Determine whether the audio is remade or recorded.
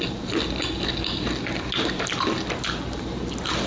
recorded